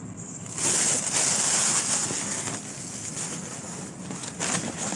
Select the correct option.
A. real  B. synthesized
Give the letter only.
A